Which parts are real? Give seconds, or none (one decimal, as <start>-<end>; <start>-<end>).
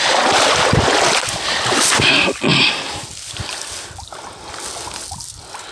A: 0.0-5.7